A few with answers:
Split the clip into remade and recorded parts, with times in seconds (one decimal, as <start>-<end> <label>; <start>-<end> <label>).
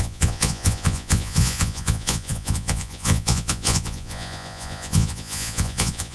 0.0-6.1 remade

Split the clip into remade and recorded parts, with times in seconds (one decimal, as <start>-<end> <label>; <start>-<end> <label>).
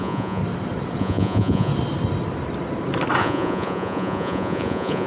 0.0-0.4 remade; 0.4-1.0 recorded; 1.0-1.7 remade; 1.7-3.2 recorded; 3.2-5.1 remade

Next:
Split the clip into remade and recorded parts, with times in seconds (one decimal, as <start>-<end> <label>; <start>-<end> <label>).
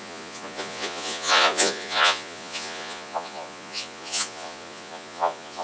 0.0-5.6 remade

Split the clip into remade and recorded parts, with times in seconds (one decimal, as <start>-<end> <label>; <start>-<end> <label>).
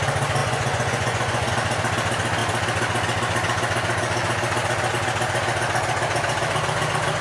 0.0-0.4 recorded; 0.4-1.5 remade; 1.5-7.2 recorded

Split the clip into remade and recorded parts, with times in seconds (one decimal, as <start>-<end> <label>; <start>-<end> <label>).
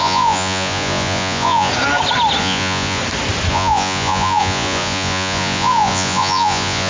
0.0-1.7 remade; 1.7-2.4 recorded; 2.4-3.0 remade; 3.0-3.5 recorded; 3.5-6.9 remade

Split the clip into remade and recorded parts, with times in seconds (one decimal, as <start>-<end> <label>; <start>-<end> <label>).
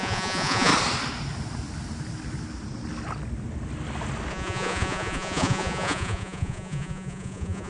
0.0-0.7 remade; 0.7-4.3 recorded; 4.3-7.7 remade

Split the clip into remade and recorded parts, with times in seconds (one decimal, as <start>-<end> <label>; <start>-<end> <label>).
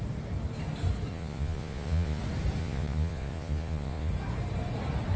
0.0-1.1 recorded; 1.1-2.2 remade; 2.2-2.6 recorded; 2.6-4.1 remade; 4.1-5.2 recorded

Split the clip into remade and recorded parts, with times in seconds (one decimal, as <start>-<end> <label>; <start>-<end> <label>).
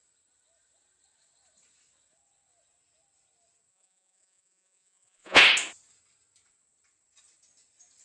0.0-3.7 recorded; 3.7-5.4 remade; 5.4-8.0 recorded